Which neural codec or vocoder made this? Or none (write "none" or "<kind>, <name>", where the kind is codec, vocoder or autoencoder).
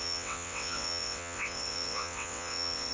vocoder, WaveNeXt